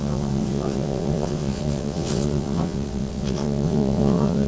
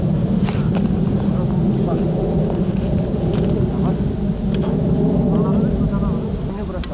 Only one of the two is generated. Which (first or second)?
first